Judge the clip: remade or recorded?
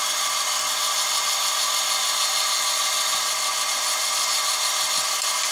recorded